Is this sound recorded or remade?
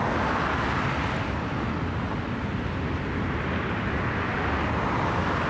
recorded